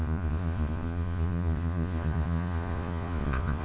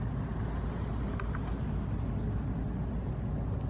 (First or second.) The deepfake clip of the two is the first